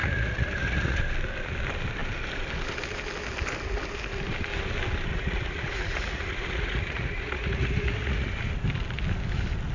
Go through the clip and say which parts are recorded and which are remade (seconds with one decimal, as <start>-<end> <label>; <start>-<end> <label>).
0.0-1.0 remade; 1.0-5.1 recorded; 5.1-8.3 remade; 8.3-9.7 recorded